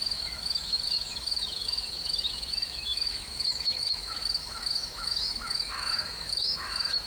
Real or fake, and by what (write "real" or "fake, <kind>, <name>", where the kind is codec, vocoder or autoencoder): fake, autoencoder, DAC-VAE